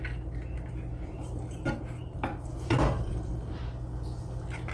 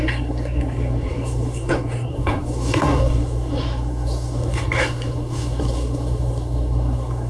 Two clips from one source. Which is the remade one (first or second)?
second